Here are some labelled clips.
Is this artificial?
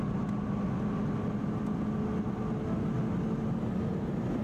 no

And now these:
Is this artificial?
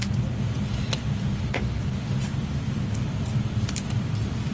no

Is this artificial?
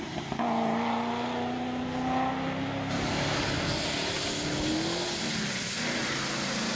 no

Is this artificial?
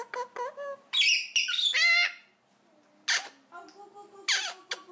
no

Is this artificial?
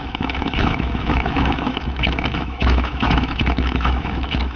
yes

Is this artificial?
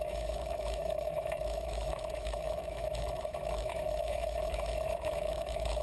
yes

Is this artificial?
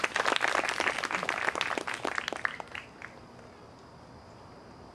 no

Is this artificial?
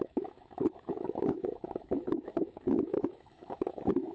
yes